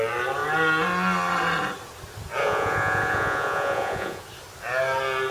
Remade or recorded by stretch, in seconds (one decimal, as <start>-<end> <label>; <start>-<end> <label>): 0.0-2.4 recorded; 2.4-4.2 remade; 4.2-5.3 recorded